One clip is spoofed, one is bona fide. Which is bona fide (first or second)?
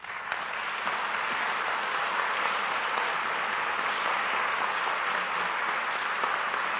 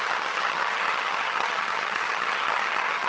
first